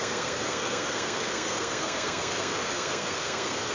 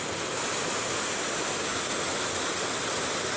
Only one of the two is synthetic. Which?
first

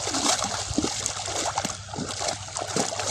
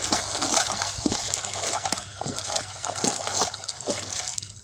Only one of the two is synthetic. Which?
second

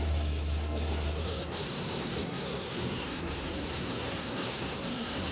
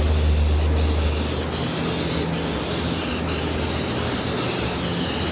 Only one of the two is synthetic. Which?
first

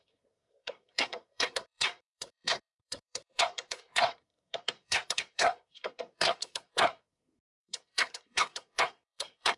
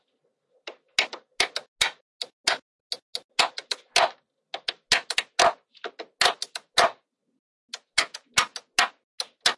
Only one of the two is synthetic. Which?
first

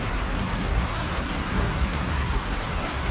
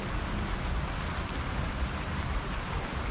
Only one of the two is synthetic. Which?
first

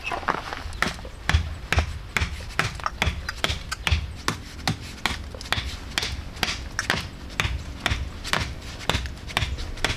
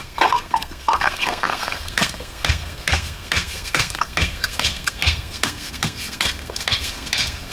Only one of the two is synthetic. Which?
second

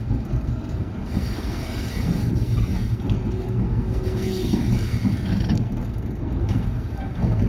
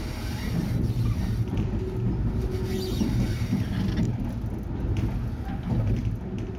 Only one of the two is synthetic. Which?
first